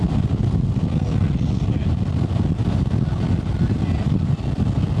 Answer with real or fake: real